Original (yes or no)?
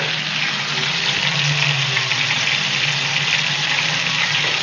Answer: yes